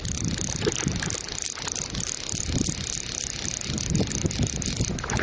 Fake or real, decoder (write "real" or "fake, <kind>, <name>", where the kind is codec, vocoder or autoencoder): real